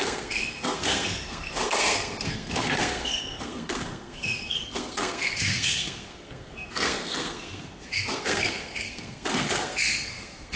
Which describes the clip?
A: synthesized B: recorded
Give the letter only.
A